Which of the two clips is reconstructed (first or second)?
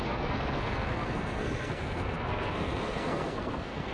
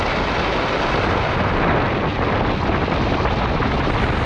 first